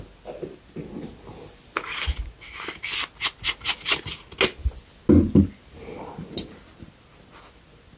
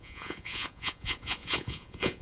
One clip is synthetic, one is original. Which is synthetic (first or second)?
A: second